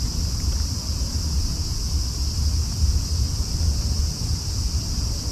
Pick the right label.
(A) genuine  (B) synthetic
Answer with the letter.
A